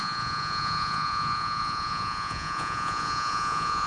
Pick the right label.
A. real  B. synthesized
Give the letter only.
B